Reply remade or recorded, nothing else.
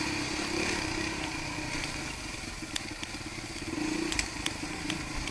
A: recorded